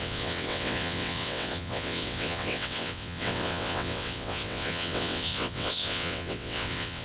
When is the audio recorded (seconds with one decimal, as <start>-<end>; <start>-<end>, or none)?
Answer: none